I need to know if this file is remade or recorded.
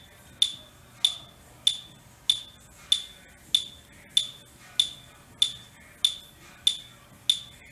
recorded